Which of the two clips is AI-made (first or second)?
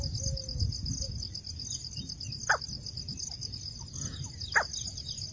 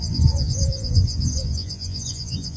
second